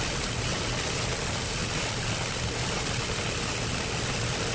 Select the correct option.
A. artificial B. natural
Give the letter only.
B